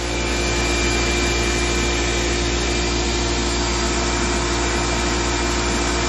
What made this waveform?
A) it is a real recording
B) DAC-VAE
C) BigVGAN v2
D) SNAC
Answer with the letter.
A